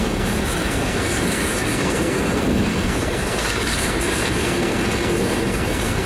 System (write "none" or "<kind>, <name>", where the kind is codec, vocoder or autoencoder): codec, SNAC